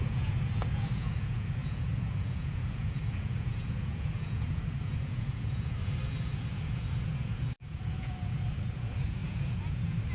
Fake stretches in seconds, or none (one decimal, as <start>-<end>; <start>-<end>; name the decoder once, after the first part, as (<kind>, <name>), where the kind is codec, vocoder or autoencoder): 0.0-10.1 (vocoder, Vocos)